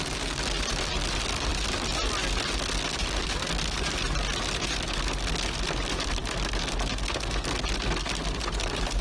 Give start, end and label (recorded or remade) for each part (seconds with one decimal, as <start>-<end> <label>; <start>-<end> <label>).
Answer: 0.0-9.0 recorded